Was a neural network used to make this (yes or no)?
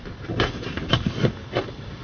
no